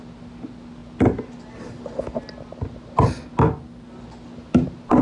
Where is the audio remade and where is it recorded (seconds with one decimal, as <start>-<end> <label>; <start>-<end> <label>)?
0.0-5.0 recorded